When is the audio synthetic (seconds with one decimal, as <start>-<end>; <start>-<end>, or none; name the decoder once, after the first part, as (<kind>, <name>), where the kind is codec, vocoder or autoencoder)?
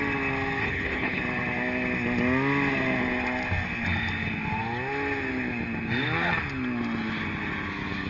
0.6-1.2 (codec, HILCodec)